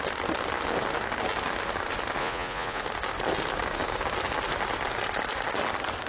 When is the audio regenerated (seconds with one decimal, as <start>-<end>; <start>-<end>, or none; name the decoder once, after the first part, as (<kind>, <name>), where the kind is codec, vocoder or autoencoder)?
2.2-2.8 (vocoder, Vocos)